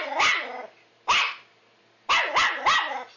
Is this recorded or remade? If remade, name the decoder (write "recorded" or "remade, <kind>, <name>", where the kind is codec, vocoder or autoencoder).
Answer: recorded